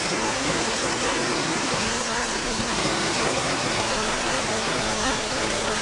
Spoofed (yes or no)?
yes